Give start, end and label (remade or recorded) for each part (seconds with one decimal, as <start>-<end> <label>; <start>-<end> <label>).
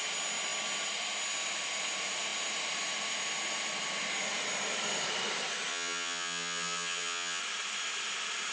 0.0-5.7 recorded; 5.7-7.4 remade; 7.4-8.5 recorded